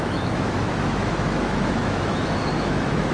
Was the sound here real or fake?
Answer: fake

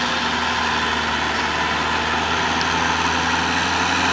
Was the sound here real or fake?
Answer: real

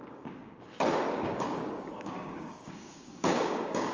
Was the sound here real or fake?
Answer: fake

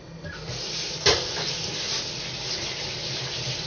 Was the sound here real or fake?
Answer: real